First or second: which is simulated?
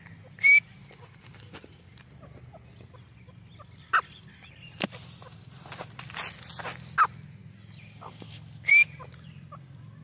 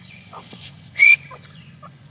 second